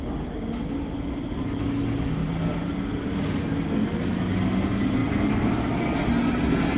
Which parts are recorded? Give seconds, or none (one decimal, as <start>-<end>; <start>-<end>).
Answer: 0.0-6.8